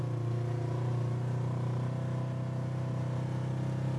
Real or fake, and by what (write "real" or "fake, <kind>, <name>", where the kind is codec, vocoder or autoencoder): real